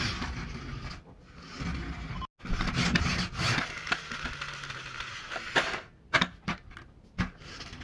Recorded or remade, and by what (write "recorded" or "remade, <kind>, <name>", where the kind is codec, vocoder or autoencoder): recorded